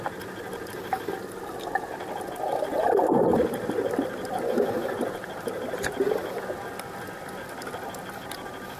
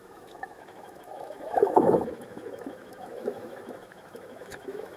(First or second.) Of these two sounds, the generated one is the second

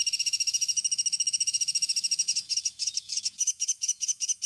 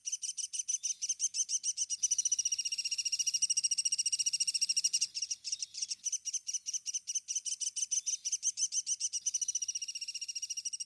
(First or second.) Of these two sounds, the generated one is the first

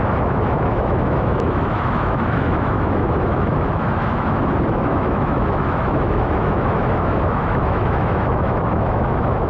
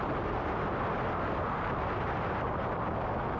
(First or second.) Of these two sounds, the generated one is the first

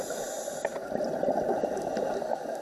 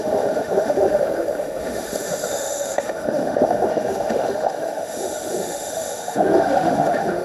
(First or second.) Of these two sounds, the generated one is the second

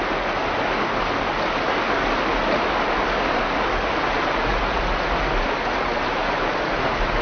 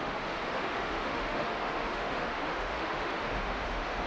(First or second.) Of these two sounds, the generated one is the second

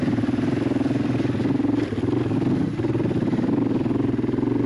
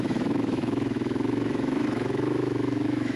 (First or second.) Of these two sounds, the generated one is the second